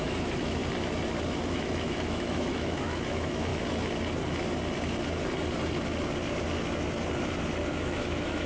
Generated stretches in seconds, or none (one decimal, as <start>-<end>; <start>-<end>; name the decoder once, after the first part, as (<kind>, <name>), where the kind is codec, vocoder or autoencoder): 0.0-0.6 (autoencoder, DAC-VAE); 1.5-3.5; 7.7-8.5